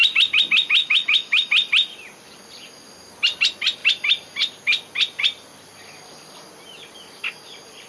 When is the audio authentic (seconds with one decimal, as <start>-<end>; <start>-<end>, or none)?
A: 0.0-0.8; 1.5-7.9